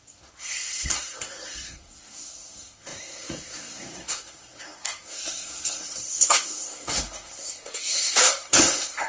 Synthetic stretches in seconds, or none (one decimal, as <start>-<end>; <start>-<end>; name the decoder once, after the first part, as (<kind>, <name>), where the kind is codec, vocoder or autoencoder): 0.0-9.1 (codec, SNAC)